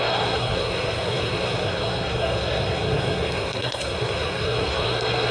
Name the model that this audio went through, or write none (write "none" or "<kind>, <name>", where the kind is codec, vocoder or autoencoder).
codec, SNAC